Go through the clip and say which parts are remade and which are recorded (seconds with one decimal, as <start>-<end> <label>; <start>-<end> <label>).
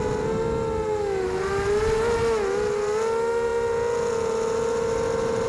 0.0-5.5 recorded